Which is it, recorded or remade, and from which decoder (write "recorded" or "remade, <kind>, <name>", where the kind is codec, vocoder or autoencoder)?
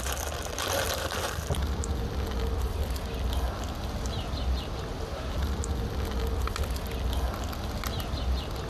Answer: recorded